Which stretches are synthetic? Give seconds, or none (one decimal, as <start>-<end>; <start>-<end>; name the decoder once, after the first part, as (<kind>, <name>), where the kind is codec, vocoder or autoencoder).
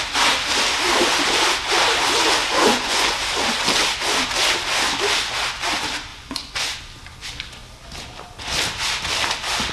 2.4-3.2 (vocoder, Vocos); 6.1-6.8